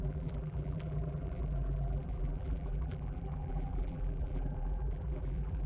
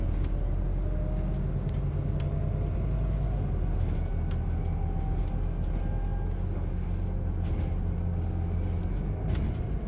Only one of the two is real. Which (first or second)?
second